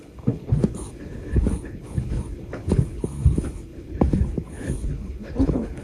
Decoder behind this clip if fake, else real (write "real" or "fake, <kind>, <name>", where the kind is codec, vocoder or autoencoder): fake, codec, HILCodec